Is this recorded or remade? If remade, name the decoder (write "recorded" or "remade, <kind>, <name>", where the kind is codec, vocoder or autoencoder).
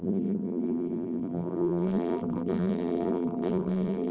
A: remade, vocoder, BigVGAN v2